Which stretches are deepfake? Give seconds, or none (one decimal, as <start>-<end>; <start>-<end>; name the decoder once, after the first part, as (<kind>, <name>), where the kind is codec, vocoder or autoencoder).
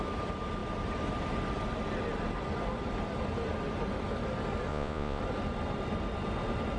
4.7-5.2 (vocoder, Vocos)